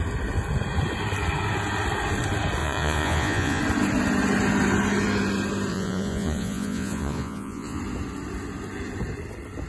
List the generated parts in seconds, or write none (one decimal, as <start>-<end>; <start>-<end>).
2.6-3.6; 5.7-7.8